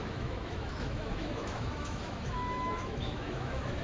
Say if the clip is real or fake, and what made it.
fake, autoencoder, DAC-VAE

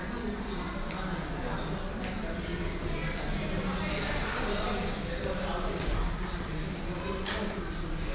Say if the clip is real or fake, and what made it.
real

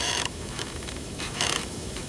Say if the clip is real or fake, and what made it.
fake, autoencoder, DAC-VAE